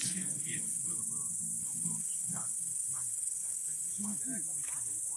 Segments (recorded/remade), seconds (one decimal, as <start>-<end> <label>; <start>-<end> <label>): 0.0-1.0 remade; 1.0-1.6 recorded; 1.6-4.2 remade; 4.2-5.2 recorded